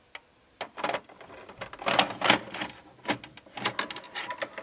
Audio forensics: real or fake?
real